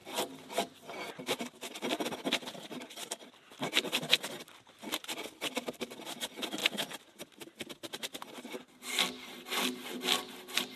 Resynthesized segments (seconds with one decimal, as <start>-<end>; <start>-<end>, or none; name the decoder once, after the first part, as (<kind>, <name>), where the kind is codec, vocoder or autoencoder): none